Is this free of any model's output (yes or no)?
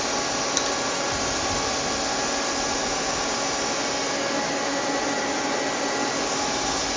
yes